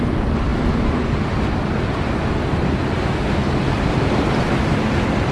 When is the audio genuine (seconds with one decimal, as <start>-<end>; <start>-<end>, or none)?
0.0-5.3

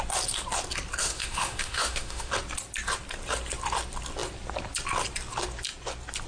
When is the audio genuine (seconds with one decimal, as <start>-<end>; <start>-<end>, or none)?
0.0-1.0; 2.3-6.3

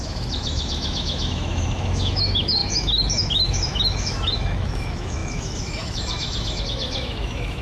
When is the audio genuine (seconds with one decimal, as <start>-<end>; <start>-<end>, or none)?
none

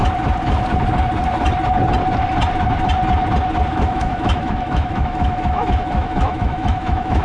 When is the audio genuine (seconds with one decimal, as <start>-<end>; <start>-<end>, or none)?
0.0-3.7

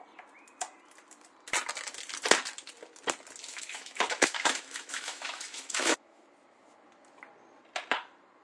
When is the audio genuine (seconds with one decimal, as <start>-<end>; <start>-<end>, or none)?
0.0-3.5; 6.3-8.4